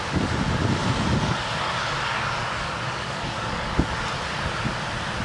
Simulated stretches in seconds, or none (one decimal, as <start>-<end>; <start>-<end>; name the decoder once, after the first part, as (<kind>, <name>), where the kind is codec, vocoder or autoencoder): 0.8-3.9 (codec, DAC)